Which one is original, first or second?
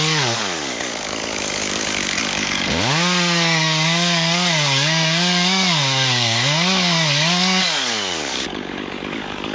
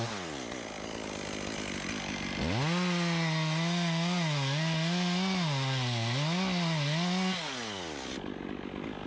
second